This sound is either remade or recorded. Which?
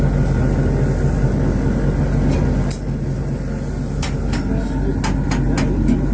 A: recorded